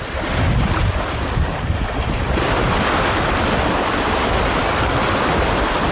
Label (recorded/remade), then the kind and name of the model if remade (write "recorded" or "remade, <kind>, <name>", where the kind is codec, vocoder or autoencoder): recorded